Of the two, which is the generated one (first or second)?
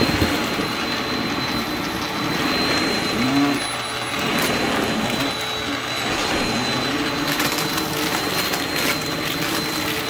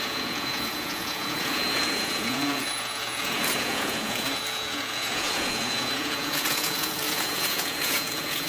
second